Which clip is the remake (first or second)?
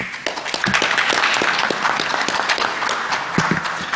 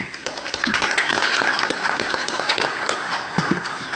second